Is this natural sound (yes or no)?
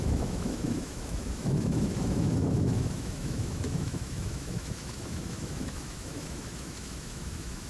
no